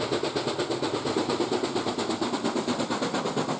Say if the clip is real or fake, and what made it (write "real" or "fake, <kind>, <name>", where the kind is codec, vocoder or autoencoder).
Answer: real